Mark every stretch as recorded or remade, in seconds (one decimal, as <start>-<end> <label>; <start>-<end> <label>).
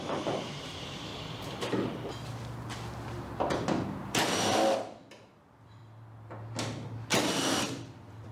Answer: 0.0-1.1 remade; 1.1-3.5 recorded; 3.5-5.8 remade; 5.8-7.6 recorded; 7.6-8.3 remade